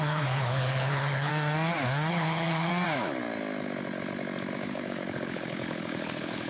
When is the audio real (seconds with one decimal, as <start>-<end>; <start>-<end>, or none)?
1.3-2.1; 2.7-4.7